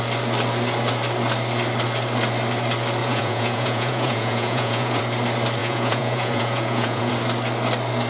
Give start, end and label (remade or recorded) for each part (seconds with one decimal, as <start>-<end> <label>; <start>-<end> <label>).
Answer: 0.0-3.0 recorded; 3.0-5.0 remade; 5.0-5.6 recorded; 5.6-7.1 remade; 7.1-8.1 recorded